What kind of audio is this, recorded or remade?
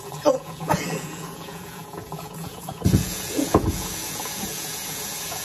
remade